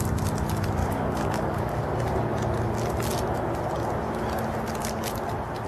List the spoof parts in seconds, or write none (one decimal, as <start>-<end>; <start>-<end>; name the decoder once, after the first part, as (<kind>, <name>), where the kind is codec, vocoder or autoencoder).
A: 0.8-1.8 (codec, DAC)